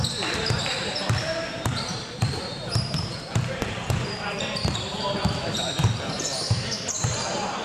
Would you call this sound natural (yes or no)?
no